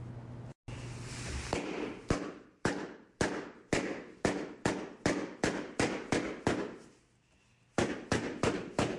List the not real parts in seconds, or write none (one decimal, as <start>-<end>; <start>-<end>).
none